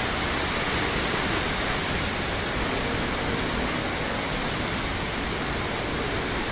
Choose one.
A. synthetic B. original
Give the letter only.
B